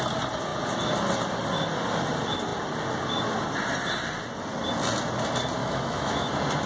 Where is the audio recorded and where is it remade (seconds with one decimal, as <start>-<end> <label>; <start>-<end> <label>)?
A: 0.0-5.6 recorded; 5.6-6.3 remade; 6.3-6.7 recorded